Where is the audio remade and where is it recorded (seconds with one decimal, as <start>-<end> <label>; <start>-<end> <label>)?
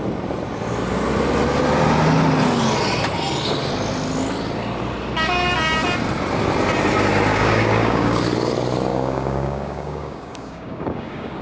0.0-7.3 recorded; 7.3-8.2 remade; 8.2-8.9 recorded; 8.9-11.4 remade